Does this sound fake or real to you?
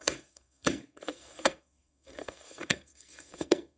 fake